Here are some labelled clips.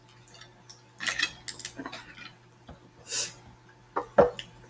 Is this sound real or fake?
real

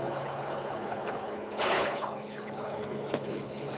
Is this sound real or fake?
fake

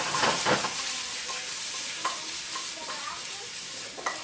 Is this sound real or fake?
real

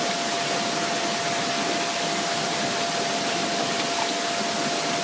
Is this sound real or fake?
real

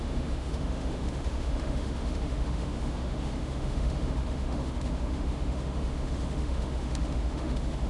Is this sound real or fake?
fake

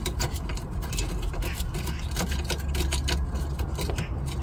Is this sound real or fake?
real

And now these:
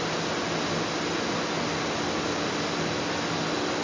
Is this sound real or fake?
real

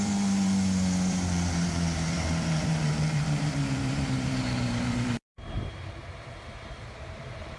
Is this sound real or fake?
fake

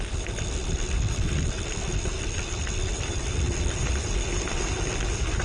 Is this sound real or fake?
fake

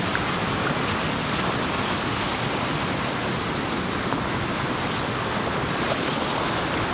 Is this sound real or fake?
real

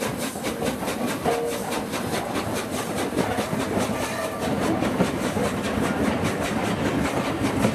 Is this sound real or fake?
real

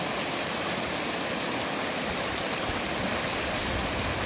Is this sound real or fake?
real